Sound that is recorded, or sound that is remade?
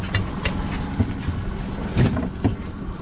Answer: recorded